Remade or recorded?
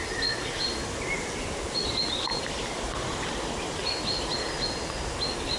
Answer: recorded